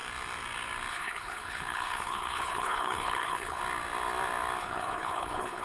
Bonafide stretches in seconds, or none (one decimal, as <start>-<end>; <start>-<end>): 0.0-0.9; 3.6-4.6